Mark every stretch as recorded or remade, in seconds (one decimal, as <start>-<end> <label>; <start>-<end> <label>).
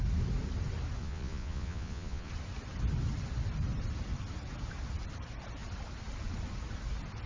0.0-1.0 recorded; 1.0-2.3 remade; 2.3-7.3 recorded